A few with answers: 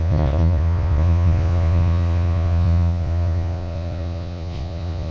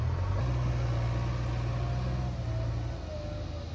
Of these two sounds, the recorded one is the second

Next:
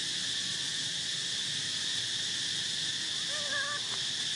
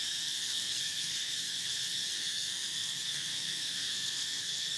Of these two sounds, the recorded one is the first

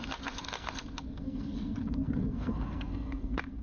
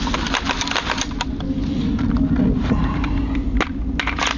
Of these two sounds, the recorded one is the second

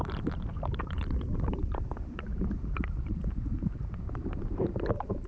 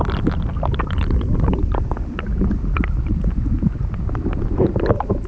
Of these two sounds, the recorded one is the second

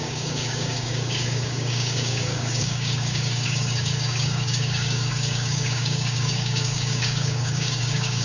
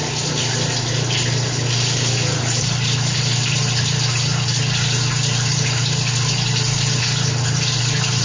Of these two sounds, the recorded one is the second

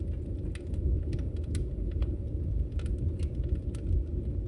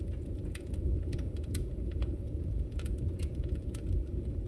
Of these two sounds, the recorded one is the first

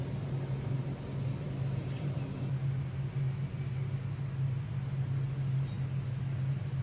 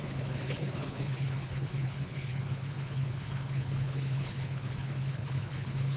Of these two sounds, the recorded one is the first